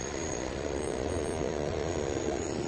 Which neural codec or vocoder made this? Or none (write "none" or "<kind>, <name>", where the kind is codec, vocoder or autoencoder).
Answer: vocoder, Vocos